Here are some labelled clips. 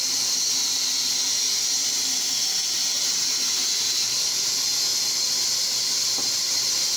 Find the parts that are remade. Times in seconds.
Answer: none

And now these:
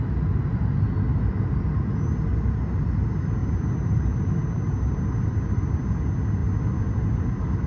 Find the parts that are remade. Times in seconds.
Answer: 3.4-5.8

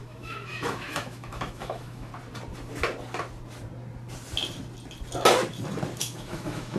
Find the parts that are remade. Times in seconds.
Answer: 0.0-2.1; 6.0-6.8

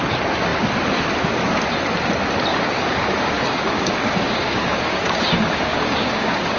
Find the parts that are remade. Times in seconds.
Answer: 2.5-6.6